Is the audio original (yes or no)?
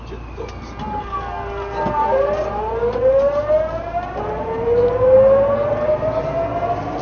yes